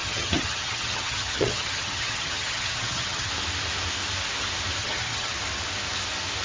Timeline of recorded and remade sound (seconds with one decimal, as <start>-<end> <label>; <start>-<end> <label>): 0.0-3.3 remade; 3.3-4.8 recorded; 4.8-5.4 remade; 5.4-6.4 recorded